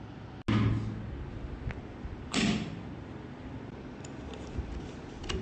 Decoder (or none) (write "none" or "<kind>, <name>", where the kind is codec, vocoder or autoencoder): none